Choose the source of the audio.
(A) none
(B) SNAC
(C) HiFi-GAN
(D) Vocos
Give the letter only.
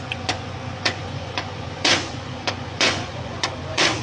D